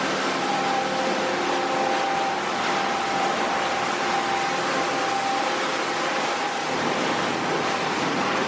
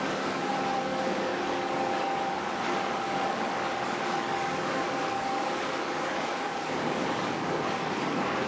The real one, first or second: first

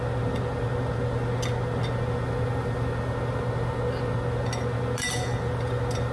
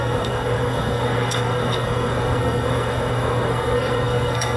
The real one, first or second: first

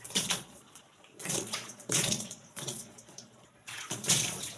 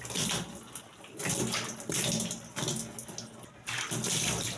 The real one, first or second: second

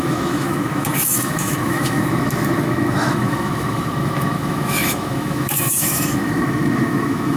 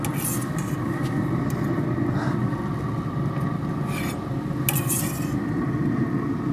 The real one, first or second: second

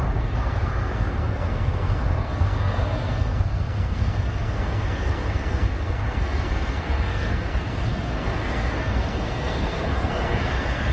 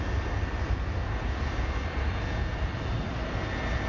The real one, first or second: second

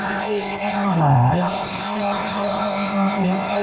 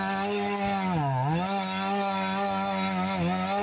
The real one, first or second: second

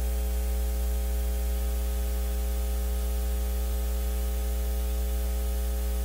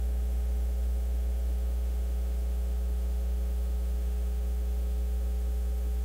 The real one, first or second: first